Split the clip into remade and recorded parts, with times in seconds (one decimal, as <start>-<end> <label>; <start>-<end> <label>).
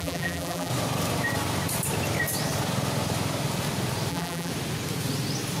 0.0-0.7 remade; 0.7-4.1 recorded; 4.1-4.5 remade; 4.5-5.6 recorded